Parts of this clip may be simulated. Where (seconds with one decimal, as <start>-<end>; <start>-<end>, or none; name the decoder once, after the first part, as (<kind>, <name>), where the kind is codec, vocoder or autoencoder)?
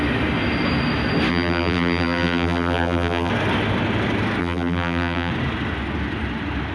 1.3-3.3 (vocoder, BigVGAN v2); 4.4-5.3